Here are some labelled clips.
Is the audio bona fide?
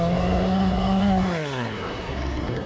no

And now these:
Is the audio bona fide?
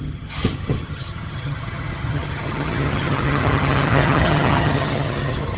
no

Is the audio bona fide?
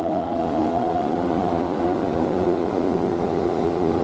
no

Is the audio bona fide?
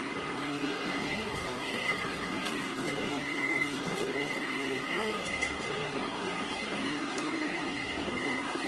no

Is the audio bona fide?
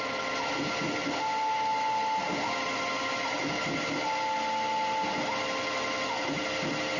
yes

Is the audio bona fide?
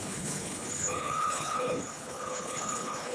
no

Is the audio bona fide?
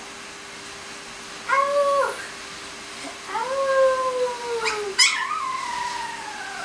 yes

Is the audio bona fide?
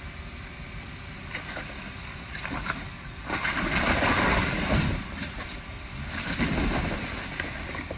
no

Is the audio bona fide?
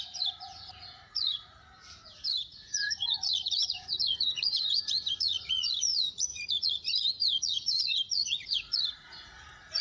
no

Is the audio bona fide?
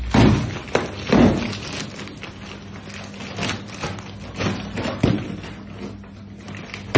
yes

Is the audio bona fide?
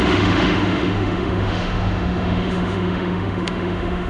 no